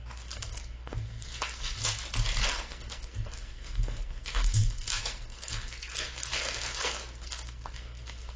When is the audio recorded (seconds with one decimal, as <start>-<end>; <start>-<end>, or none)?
1.8-2.4